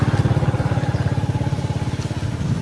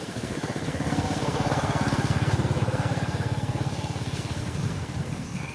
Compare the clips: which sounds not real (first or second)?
second